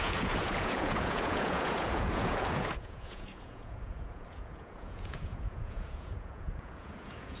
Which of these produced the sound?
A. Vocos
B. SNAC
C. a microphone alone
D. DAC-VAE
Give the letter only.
A